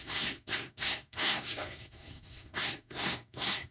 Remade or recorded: remade